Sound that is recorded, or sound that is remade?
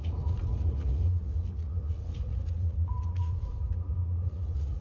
remade